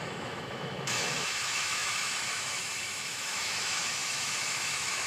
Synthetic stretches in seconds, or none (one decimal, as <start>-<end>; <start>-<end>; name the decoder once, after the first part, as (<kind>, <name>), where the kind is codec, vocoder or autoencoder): 0.0-5.1 (autoencoder, DAC-VAE)